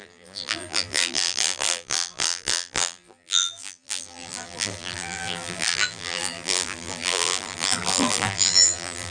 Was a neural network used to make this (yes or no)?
yes